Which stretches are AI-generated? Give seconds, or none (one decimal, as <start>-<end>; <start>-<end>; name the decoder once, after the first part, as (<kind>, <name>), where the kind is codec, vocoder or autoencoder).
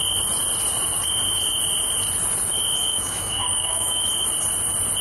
2.9-4.0 (autoencoder, DAC-VAE)